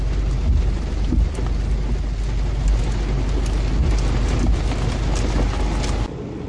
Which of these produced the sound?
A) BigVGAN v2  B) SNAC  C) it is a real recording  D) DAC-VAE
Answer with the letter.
C